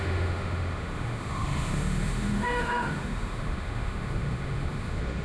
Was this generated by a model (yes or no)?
yes